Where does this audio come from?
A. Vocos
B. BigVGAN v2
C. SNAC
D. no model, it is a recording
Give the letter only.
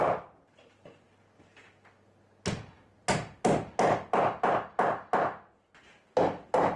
D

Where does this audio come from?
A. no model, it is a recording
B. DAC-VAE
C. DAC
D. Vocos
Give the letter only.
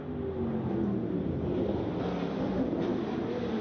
A